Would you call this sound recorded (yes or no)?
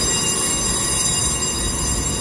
yes